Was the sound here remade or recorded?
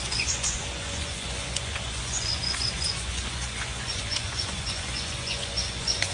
remade